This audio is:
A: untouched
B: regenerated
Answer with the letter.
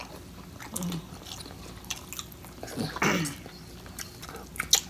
A